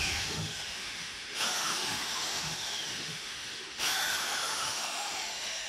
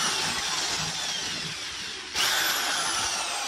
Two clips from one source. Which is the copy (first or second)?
first